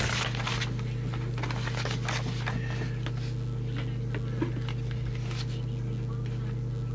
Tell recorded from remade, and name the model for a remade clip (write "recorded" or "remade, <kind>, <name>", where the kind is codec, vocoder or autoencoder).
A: recorded